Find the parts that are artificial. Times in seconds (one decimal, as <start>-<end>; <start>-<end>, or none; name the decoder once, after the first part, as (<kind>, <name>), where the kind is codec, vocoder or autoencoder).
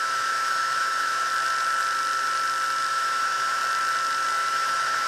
0.0-1.3 (autoencoder, DAC-VAE); 2.9-3.6; 4.5-5.1